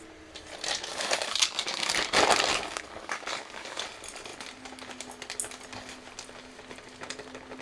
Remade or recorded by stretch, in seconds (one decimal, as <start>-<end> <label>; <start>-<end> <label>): 0.0-0.9 recorded; 0.9-1.9 remade; 1.9-2.5 recorded; 2.5-3.8 remade; 3.8-7.6 recorded